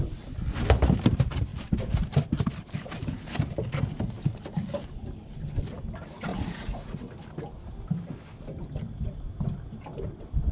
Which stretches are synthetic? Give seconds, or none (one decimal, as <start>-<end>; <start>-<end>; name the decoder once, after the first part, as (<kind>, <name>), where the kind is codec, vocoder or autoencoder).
6.3-7.1 (vocoder, Vocos)